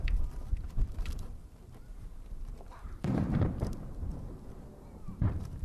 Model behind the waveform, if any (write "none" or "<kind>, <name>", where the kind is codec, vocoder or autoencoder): vocoder, BigVGAN v2